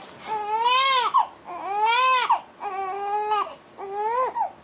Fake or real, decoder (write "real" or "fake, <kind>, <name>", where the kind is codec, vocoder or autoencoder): real